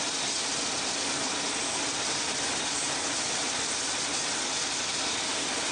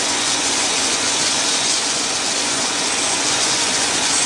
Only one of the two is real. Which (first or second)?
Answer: first